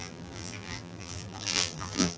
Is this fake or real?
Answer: fake